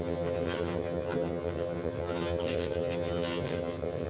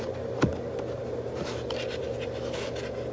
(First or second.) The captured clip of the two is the second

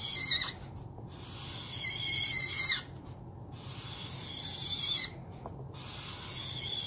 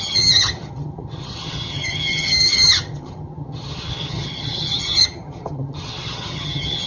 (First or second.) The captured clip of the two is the first